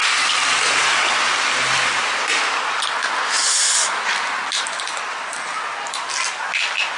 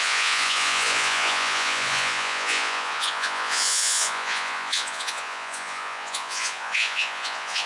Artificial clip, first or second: second